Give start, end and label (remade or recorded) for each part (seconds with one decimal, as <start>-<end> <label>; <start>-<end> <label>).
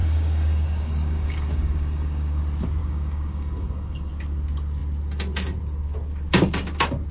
0.0-2.4 remade; 2.4-2.8 recorded; 2.8-4.1 remade; 4.1-7.1 recorded